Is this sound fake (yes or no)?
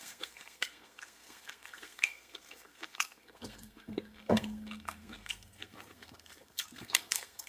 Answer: yes